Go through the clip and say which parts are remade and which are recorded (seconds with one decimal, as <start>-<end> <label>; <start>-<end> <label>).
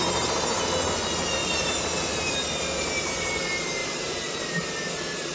0.0-1.4 recorded; 1.4-2.3 remade; 2.3-3.8 recorded; 3.8-4.4 remade; 4.4-5.3 recorded